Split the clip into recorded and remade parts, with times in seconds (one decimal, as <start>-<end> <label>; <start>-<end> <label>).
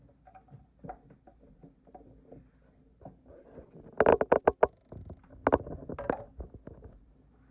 0.0-7.5 recorded